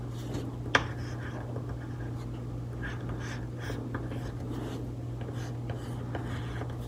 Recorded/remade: recorded